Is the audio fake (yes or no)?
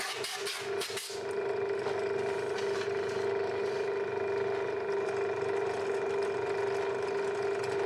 no